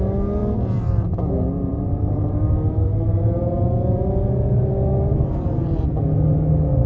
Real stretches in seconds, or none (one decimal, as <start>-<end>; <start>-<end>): 0.0-0.4; 1.1-1.7; 5.8-6.9